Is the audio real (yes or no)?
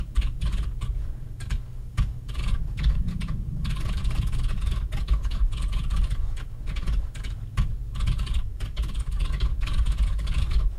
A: no